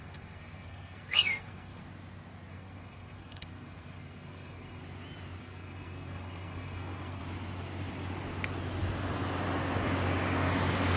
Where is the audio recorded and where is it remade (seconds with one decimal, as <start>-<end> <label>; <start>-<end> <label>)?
0.0-1.8 remade; 1.8-2.5 recorded; 2.5-4.8 remade; 4.8-5.4 recorded; 5.4-7.2 remade; 7.2-11.0 recorded